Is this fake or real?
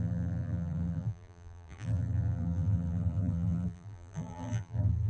fake